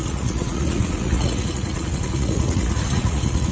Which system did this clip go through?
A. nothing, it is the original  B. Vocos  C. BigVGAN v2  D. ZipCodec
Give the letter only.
B